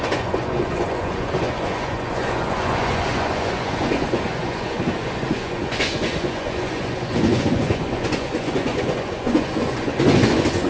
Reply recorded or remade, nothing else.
remade